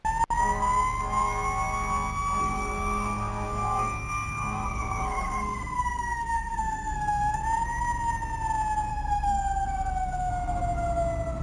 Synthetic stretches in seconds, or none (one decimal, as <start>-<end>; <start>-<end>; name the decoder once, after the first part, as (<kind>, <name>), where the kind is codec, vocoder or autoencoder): 2.4-7.4 (codec, SNAC); 8.9-10.3